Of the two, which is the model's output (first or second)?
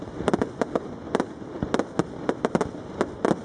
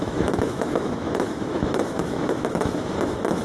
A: second